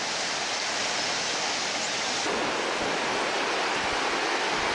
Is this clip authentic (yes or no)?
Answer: yes